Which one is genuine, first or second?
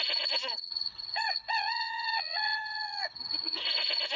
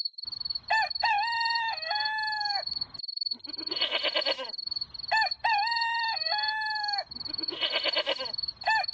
second